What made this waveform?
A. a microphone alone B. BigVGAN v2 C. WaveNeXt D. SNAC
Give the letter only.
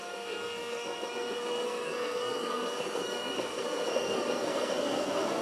D